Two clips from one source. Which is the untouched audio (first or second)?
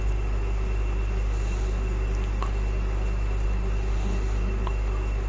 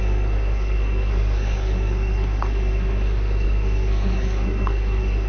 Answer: first